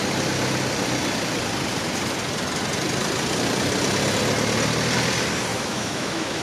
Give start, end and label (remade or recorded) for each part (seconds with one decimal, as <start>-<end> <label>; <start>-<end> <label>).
0.0-5.5 recorded; 5.5-6.4 remade

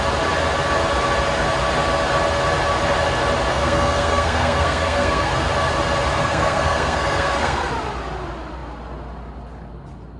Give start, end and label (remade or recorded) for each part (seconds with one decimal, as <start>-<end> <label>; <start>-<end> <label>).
0.0-3.5 recorded; 3.5-5.3 remade; 5.3-6.2 recorded; 6.2-7.7 remade; 7.7-10.2 recorded

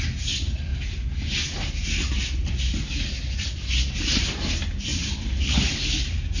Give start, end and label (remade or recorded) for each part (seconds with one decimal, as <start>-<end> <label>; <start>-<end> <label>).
0.0-6.4 recorded

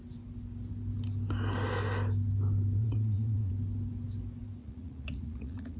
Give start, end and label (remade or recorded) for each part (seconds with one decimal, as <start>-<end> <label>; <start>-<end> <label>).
0.0-2.8 recorded; 2.8-3.5 remade; 3.5-4.6 recorded; 4.6-5.8 remade

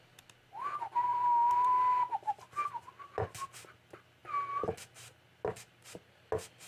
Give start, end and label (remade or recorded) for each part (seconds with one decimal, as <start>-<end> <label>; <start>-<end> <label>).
0.0-1.1 recorded; 1.1-2.9 remade; 2.9-6.7 recorded

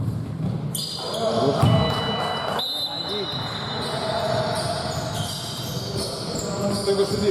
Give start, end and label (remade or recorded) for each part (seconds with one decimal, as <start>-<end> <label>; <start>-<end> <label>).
0.0-7.3 recorded